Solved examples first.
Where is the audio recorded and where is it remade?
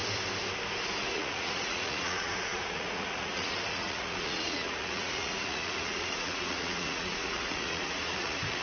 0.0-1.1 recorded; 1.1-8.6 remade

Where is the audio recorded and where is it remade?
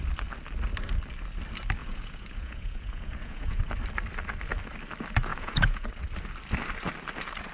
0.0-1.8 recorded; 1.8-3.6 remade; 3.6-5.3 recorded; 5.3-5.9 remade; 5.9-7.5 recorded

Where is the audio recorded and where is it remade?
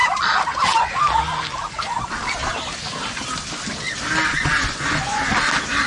0.0-4.3 recorded; 4.3-5.2 remade; 5.2-5.9 recorded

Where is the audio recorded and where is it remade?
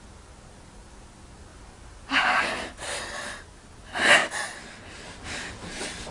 0.0-1.5 recorded; 1.5-2.4 remade; 2.4-6.1 recorded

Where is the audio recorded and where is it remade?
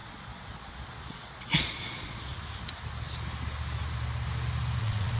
0.0-2.3 remade; 2.3-4.8 recorded; 4.8-5.2 remade